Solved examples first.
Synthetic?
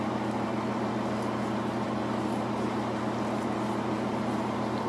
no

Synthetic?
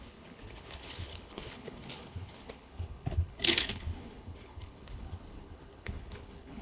yes